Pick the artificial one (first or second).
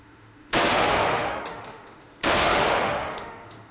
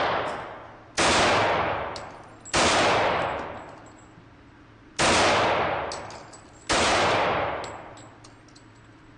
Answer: first